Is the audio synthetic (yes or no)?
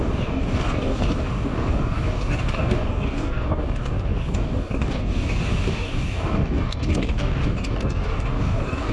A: yes